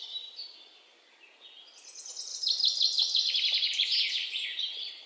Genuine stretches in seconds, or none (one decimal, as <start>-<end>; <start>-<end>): 0.0-2.3; 4.6-5.1

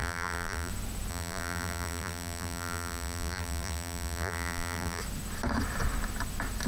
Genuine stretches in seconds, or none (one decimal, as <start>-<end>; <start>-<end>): 0.7-1.1; 5.0-6.7

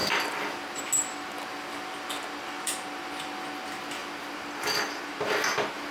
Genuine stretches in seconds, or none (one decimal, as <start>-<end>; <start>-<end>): 0.8-1.5; 3.3-4.0; 5.0-5.9

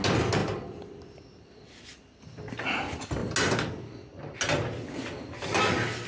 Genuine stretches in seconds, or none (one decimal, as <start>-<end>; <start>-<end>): 0.0-6.1

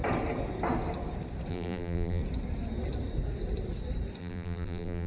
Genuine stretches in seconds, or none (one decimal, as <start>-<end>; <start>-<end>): 0.0-1.5; 2.2-4.2

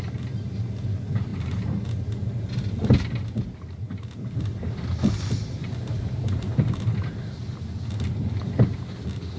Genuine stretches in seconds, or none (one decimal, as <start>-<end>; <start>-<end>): 0.0-5.6; 6.6-9.4